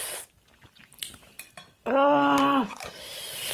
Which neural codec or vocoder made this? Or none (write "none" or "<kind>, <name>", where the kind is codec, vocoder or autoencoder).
vocoder, BigVGAN v2